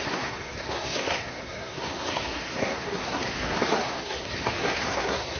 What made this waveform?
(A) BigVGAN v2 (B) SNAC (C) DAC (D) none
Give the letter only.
B